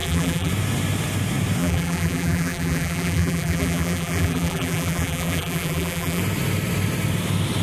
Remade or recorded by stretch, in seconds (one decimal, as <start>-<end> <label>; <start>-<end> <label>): 0.0-0.5 remade; 0.5-1.6 recorded; 1.6-6.2 remade; 6.2-7.6 recorded